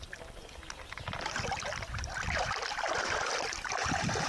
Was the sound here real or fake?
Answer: real